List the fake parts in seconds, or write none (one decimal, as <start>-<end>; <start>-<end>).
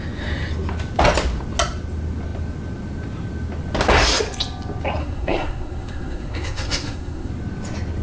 5.0-7.3